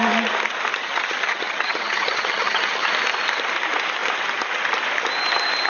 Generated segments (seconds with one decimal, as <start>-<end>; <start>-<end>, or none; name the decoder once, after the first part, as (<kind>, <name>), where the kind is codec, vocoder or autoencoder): 0.8-2.9 (vocoder, HiFi-GAN)

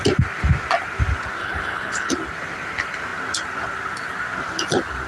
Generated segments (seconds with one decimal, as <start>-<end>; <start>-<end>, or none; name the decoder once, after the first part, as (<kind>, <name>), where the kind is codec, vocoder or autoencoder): 1.4-2.1 (codec, HILCodec)

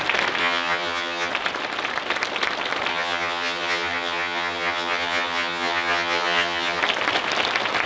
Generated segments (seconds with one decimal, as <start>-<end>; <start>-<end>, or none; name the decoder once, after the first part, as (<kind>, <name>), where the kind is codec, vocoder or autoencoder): 0.4-1.3 (vocoder, HiFi-GAN); 2.9-6.8

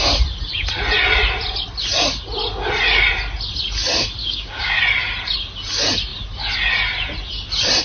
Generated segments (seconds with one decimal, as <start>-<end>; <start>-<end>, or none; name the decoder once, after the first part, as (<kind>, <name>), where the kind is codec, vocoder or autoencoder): 4.2-4.7 (codec, DAC)

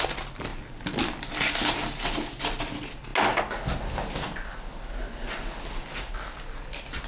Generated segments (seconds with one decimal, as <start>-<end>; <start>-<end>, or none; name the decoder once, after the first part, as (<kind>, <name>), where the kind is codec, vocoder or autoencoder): none

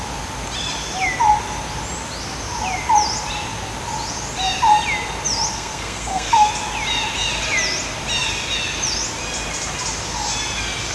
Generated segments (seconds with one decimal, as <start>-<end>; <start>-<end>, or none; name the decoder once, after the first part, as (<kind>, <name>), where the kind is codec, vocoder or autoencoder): 5.5-6.5 (codec, SNAC)

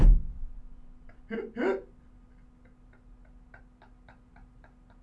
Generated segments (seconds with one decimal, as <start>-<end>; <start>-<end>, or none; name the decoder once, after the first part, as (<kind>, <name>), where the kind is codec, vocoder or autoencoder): none

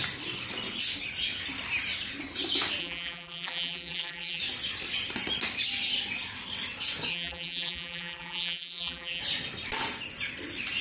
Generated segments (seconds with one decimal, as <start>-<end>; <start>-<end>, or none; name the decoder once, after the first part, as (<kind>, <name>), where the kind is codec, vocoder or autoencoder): 2.8-4.4 (vocoder, BigVGAN v2); 7.1-9.2